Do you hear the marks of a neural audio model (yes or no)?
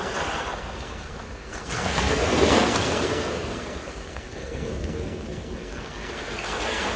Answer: yes